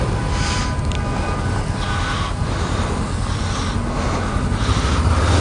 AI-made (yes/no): no